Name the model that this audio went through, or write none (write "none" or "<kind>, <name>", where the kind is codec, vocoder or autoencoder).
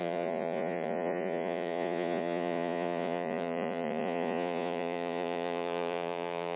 vocoder, Vocos